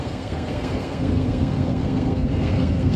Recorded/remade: remade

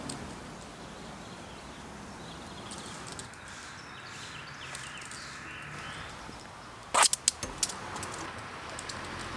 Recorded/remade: recorded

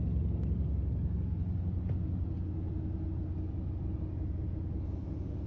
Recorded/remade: recorded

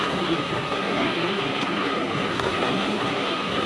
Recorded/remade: remade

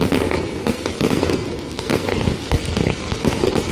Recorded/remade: remade